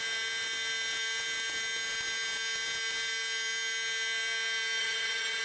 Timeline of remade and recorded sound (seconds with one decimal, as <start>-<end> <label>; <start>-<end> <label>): 0.0-4.8 recorded; 4.8-5.4 remade